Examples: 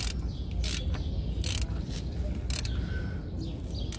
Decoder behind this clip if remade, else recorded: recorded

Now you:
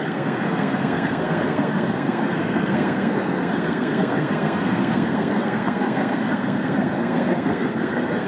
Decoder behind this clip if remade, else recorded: remade, codec, SNAC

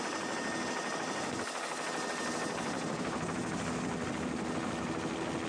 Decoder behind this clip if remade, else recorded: recorded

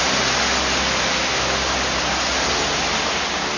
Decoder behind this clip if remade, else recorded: recorded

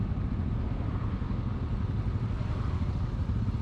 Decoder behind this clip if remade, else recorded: recorded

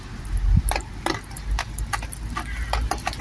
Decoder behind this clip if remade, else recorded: recorded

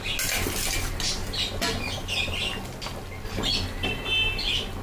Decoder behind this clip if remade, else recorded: recorded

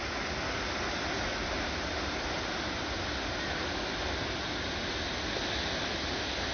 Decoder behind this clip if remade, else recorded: recorded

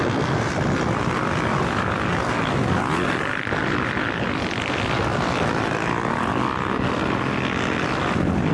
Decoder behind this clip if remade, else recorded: recorded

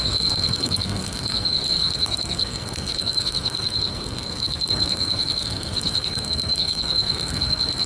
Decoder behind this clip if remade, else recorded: remade, codec, SNAC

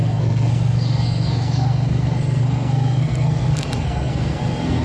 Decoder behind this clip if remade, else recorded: remade, codec, SNAC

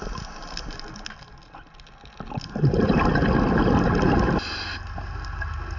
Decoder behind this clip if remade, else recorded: recorded